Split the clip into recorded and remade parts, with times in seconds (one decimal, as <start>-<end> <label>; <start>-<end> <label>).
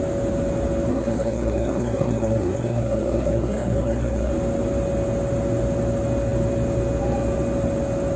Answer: 0.0-0.9 recorded; 0.9-4.3 remade; 4.3-8.2 recorded